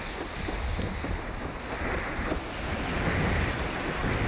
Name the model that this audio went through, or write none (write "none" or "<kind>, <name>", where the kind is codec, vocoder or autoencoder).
none